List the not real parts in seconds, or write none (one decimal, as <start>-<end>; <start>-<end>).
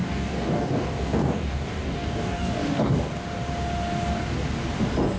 0.0-3.1